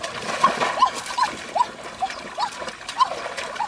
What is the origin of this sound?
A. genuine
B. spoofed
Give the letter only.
A